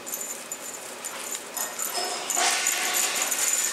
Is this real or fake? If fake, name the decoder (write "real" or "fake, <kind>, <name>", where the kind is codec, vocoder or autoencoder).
real